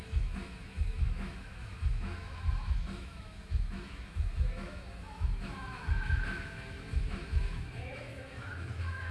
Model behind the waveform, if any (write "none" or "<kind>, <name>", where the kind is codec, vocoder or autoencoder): autoencoder, DAC-VAE